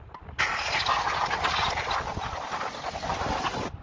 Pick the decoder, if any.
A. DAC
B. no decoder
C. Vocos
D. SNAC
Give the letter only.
B